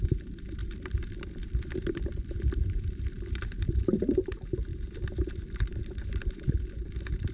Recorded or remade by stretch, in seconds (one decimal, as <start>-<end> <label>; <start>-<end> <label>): 0.0-7.3 remade